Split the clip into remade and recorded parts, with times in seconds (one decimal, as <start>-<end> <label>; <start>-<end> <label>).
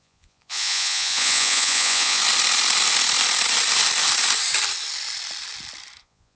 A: 0.0-2.2 remade; 2.2-6.0 recorded; 6.0-6.4 remade